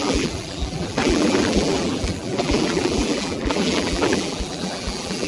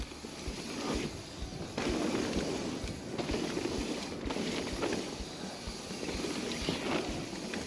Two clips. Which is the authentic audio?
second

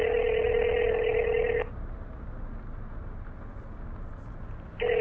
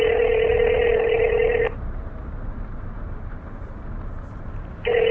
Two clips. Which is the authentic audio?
first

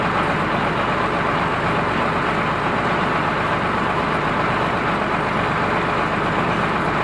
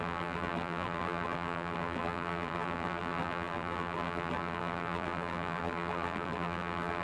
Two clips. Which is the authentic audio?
first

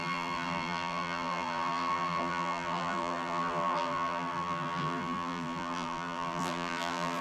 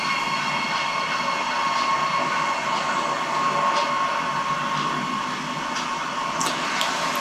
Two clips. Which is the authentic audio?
second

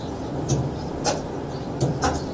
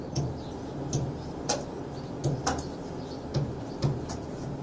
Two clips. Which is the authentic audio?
second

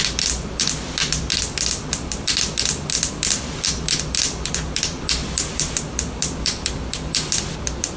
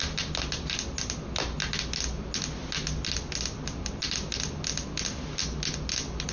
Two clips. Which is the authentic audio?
second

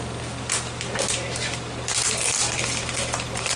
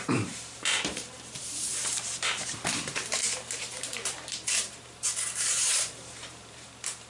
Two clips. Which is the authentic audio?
first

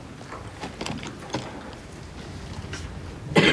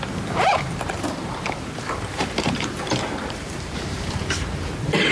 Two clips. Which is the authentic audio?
first